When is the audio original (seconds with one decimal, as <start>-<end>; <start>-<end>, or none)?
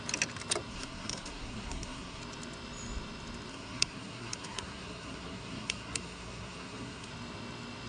0.0-0.7; 2.2-3.5; 7.1-7.9